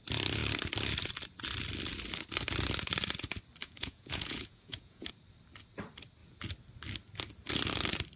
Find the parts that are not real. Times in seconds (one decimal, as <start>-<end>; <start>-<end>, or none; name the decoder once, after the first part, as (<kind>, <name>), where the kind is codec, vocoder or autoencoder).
3.6-5.1 (vocoder, Vocos)